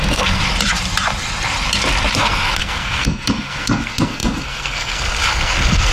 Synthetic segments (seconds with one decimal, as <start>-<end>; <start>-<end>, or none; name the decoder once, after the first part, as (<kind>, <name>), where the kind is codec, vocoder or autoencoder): 0.0-0.4 (codec, SNAC); 2.2-5.9